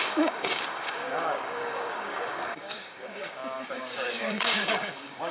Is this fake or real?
fake